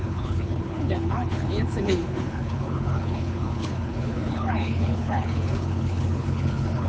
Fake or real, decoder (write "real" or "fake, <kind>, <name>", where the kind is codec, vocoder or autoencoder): fake, codec, HILCodec